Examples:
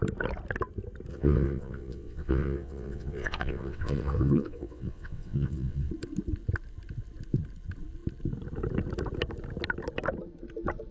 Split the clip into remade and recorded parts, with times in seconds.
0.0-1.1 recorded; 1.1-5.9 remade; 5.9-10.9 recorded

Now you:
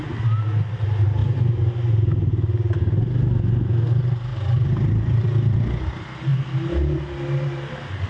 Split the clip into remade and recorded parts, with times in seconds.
0.0-4.3 recorded; 4.3-5.6 remade; 5.6-8.1 recorded

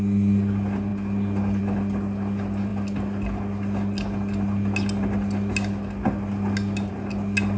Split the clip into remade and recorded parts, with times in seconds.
0.0-7.6 recorded